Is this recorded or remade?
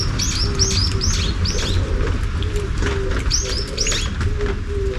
recorded